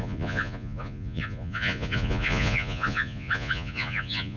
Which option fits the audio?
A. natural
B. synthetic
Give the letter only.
B